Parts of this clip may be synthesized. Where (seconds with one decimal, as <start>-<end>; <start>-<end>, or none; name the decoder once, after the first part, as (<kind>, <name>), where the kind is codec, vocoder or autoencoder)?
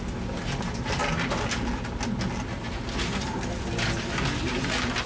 none